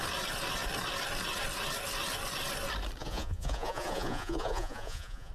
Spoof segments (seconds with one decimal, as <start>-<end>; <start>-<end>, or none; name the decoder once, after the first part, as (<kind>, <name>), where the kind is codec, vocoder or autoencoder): 3.0-5.3 (vocoder, Vocos)